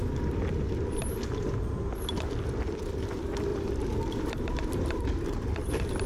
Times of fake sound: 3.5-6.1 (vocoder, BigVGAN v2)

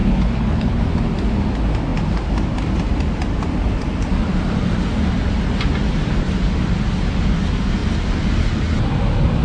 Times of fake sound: 0.0-0.8 (codec, HILCodec)

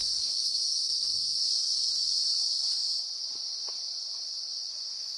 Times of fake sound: 0.0-2.0 (autoencoder, DAC-VAE); 4.7-5.2

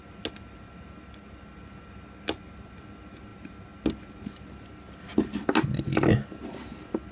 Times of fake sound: none